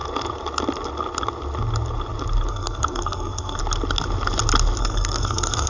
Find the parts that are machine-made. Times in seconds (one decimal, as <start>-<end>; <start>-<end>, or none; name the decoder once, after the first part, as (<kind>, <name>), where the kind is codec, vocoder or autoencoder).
2.5-3.6 (codec, SNAC); 4.8-5.7